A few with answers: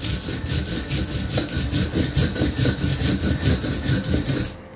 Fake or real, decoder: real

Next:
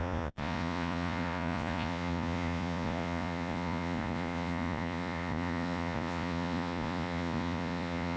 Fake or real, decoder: fake, vocoder, Vocos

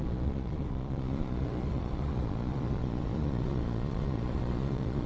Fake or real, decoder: fake, vocoder, Vocos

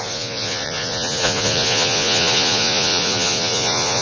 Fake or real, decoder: fake, vocoder, Vocos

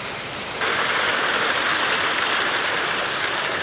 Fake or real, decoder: real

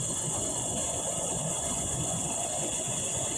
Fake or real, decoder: fake, vocoder, Vocos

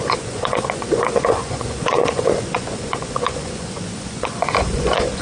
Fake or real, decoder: fake, vocoder, Vocos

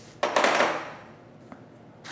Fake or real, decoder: real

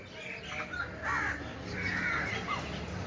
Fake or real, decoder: real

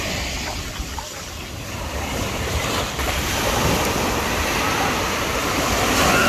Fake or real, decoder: real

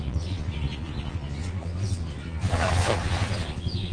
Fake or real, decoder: fake, vocoder, Vocos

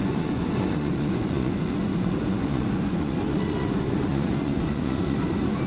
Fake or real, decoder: fake, vocoder, Vocos